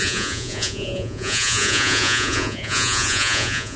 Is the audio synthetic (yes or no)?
yes